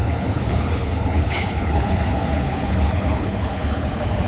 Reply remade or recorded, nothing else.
remade